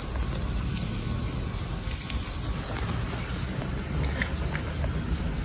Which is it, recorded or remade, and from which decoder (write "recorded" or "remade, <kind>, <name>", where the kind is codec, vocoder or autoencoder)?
recorded